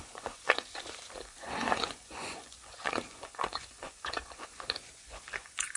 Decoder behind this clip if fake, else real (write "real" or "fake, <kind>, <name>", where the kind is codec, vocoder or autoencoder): fake, vocoder, Vocos